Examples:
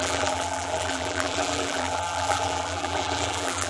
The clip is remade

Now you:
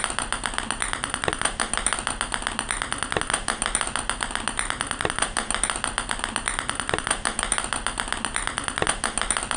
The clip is recorded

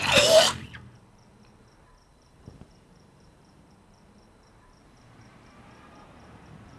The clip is remade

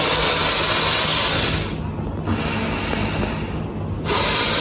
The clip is recorded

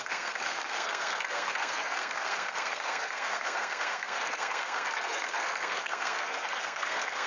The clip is remade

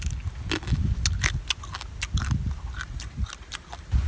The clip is recorded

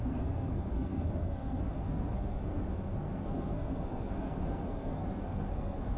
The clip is remade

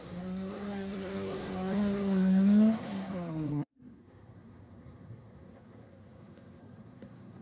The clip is remade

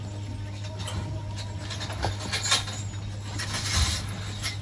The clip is recorded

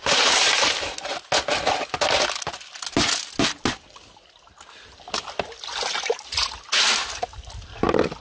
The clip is recorded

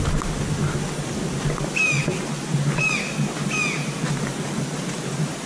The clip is recorded